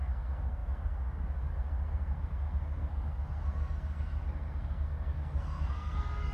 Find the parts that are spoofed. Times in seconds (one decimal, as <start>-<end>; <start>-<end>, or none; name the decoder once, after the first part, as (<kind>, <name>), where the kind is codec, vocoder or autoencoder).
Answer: 0.0-6.3 (codec, SNAC)